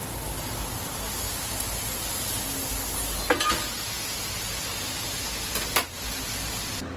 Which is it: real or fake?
real